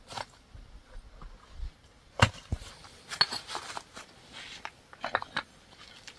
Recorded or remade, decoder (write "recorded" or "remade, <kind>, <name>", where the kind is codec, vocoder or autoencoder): recorded